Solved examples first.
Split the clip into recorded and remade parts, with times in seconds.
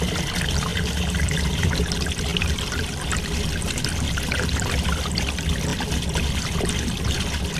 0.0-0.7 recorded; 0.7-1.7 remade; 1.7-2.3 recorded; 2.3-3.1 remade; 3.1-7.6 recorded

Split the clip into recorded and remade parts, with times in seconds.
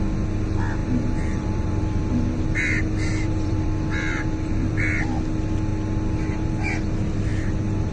0.0-0.8 recorded; 0.8-5.0 remade; 5.0-7.9 recorded